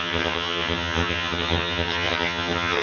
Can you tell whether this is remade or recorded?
remade